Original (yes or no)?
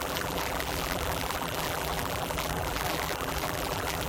no